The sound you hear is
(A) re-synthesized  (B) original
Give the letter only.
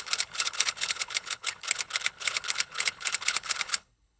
A